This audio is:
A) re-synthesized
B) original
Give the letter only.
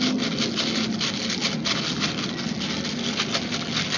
B